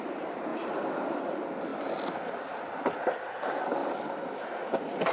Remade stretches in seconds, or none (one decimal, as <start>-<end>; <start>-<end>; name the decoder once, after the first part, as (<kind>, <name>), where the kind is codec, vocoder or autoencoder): none